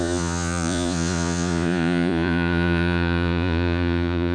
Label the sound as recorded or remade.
remade